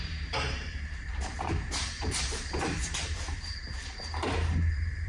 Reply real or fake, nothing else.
fake